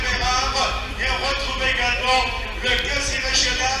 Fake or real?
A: real